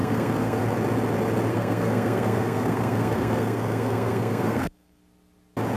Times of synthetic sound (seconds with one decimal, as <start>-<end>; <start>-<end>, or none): 0.0-0.6; 1.5-5.0